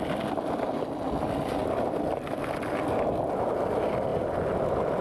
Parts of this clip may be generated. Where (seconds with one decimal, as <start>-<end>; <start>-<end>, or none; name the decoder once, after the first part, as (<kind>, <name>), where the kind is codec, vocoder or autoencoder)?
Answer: 1.6-2.4 (vocoder, BigVGAN v2); 4.1-5.0

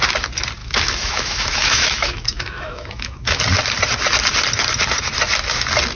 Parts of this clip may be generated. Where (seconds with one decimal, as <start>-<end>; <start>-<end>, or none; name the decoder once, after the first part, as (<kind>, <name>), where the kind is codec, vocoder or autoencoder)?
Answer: 0.6-3.4 (autoencoder, DAC-VAE)

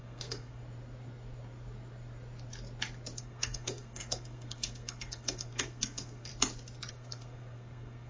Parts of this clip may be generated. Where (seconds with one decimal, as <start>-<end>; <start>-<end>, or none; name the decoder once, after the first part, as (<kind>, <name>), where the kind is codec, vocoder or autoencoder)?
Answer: 0.0-0.6 (codec, SNAC); 3.2-6.3; 6.9-8.1

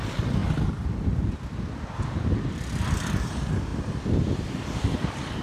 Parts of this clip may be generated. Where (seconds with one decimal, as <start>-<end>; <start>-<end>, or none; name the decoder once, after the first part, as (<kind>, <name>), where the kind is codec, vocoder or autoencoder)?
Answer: 0.0-5.4 (vocoder, BigVGAN v2)

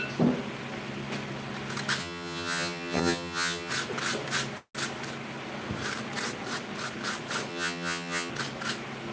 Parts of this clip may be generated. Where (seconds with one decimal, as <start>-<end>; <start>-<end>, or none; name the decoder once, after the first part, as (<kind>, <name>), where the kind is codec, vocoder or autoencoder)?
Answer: 2.0-3.7 (vocoder, HiFi-GAN); 7.5-8.3

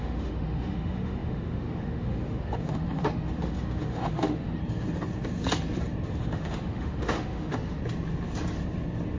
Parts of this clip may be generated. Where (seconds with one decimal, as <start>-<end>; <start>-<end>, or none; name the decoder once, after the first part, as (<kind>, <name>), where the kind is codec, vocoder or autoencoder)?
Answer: 0.0-4.6 (autoencoder, DAC-VAE); 6.2-7.8

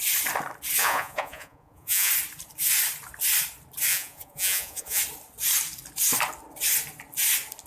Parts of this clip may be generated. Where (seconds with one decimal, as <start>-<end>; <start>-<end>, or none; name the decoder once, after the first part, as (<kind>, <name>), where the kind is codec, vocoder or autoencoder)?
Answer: 0.8-2.1 (vocoder, Vocos); 3.9-5.0

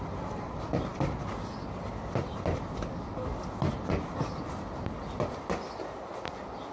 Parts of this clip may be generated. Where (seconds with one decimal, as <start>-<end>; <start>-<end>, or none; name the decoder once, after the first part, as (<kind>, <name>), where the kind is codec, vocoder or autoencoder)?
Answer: none